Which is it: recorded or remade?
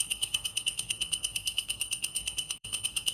remade